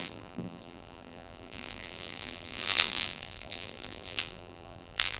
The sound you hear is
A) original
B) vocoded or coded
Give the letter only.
B